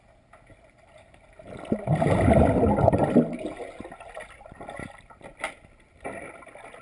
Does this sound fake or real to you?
real